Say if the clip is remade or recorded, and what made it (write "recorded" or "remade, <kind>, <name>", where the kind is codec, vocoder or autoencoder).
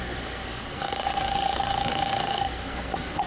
remade, codec, SNAC